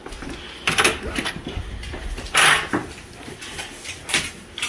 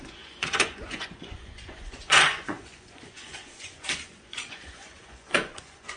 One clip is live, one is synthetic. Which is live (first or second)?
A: first